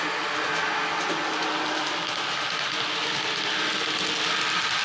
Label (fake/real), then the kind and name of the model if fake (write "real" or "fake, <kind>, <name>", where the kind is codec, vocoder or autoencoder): real